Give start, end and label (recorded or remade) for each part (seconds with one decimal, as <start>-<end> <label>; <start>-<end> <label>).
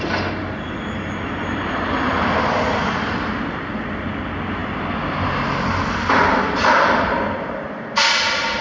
0.0-8.6 recorded